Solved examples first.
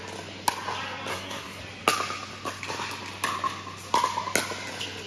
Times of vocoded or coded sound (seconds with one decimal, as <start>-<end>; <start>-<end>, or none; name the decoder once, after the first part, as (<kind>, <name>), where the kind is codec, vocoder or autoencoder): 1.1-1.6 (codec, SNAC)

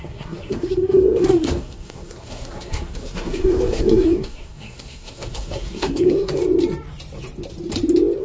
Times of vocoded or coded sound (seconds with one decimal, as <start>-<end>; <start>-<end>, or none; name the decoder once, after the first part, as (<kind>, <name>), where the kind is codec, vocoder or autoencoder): 0.0-6.4 (codec, SNAC)

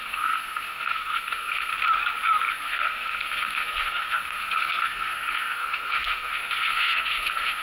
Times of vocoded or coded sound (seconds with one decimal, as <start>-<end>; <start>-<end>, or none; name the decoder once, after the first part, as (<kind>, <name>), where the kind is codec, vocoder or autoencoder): 0.0-1.7 (codec, SNAC); 2.5-7.6

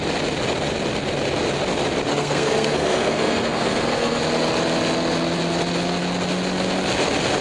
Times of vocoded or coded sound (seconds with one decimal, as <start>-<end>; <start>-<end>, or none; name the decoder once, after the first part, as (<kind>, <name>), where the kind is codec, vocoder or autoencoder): 2.1-4.2 (codec, SNAC)

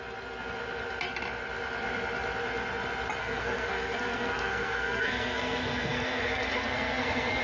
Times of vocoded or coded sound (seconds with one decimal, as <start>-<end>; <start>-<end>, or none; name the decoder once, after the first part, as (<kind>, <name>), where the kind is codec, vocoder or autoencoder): 3.2-7.4 (codec, SNAC)